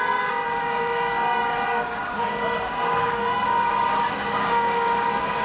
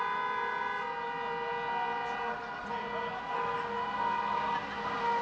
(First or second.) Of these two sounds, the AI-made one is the first